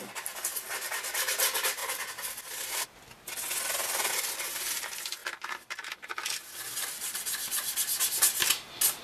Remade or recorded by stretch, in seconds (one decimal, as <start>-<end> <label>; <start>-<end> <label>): 0.0-9.0 recorded